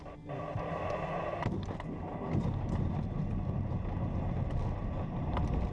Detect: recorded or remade recorded